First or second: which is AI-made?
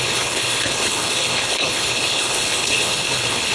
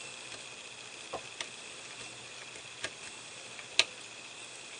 first